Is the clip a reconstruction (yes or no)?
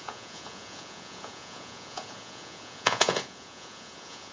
yes